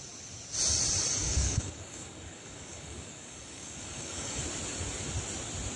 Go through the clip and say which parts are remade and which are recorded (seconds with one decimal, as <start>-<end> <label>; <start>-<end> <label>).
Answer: 0.0-1.2 recorded; 1.2-4.4 remade; 4.4-5.8 recorded